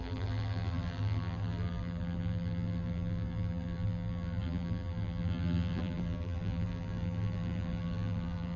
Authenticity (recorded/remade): remade